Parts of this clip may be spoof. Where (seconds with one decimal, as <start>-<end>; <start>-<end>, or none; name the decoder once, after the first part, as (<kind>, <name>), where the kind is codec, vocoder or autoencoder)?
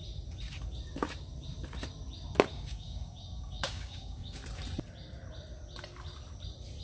2.5-4.4 (codec, DAC)